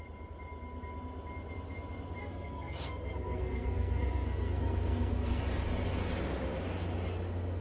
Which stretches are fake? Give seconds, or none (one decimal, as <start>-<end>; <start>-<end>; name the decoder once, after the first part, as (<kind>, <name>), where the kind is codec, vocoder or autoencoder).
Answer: 2.2-5.4 (codec, SNAC)